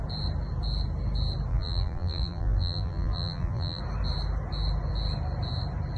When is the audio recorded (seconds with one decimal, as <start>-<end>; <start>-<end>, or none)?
0.0-1.5; 3.8-6.0